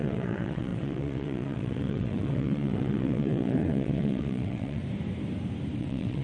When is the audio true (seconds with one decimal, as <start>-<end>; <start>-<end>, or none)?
4.8-5.8